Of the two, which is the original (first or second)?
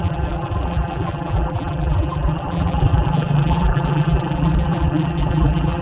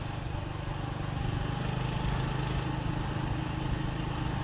second